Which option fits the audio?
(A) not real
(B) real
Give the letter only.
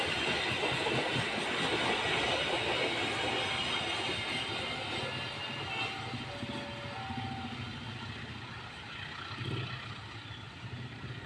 B